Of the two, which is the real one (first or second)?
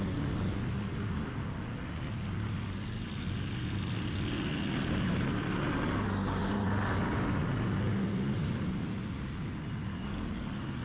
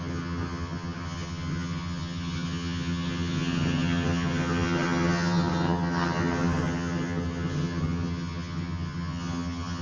first